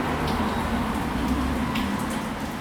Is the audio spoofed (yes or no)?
no